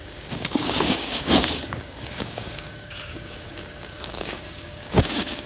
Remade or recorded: remade